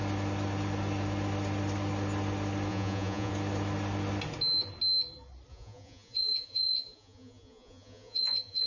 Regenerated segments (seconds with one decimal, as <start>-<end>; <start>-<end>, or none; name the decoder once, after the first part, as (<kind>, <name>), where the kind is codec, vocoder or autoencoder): 2.7-3.3 (vocoder, Vocos); 5.5-8.7